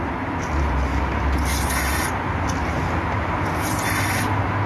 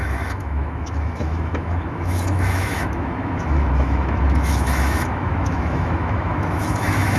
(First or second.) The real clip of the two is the first